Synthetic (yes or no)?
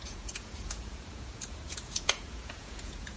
yes